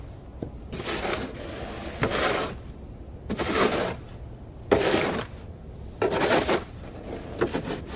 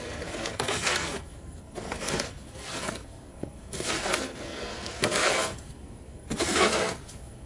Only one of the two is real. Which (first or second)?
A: first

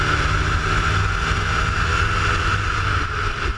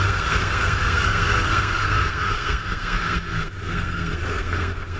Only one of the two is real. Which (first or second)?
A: first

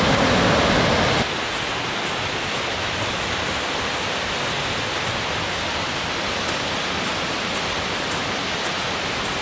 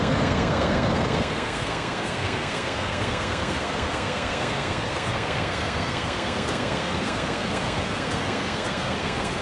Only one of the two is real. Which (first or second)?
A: first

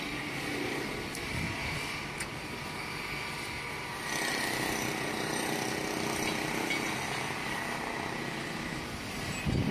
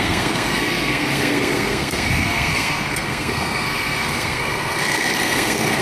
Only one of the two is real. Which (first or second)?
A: first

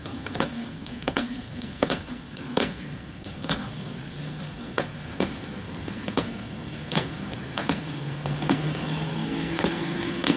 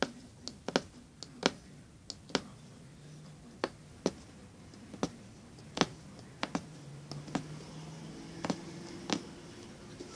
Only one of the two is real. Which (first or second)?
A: second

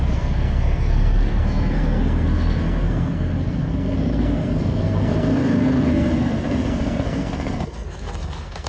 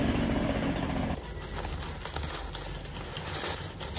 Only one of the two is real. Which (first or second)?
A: second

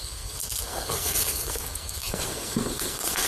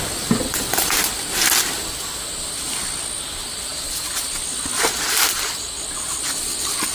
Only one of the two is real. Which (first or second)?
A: second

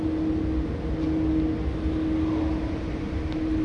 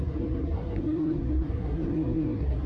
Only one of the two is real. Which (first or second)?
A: first